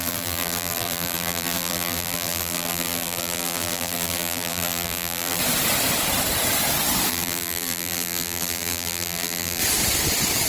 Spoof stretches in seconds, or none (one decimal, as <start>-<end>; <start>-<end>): 0.0-5.4; 7.1-9.6